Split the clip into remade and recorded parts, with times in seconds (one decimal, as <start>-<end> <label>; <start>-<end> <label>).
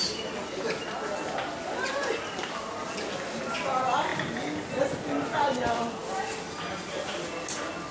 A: 0.0-7.9 recorded